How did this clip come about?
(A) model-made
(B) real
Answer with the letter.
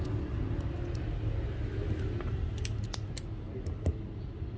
B